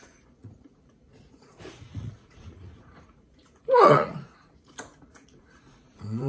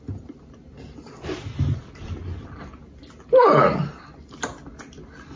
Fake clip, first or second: first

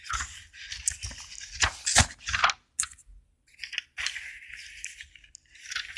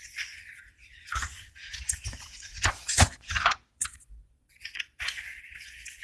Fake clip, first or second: second